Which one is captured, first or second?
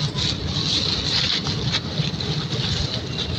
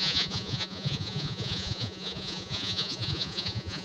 first